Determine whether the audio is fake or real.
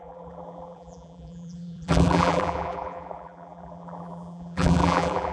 fake